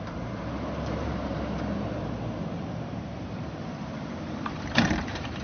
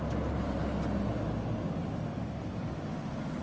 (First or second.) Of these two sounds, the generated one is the first